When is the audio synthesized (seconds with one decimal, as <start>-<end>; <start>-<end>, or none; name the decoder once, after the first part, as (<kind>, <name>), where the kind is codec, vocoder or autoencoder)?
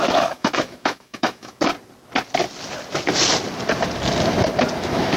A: 0.0-1.7 (autoencoder, DAC-VAE); 4.8-5.2